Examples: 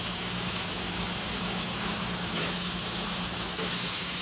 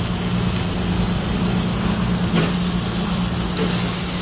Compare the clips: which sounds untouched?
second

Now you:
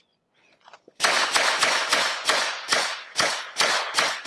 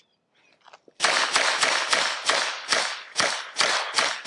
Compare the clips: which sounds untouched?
second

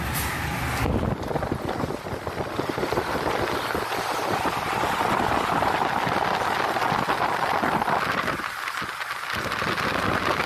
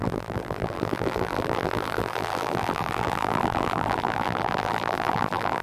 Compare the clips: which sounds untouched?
first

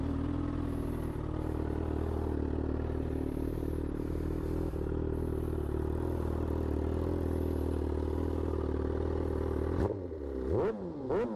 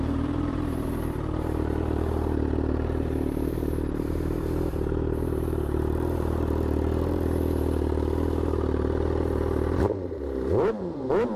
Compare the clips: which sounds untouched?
first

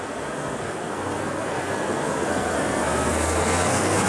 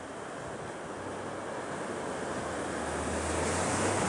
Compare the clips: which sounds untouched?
second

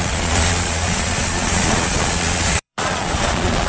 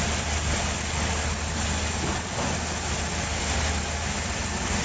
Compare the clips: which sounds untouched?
second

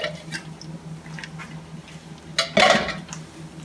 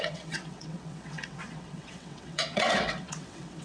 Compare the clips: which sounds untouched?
first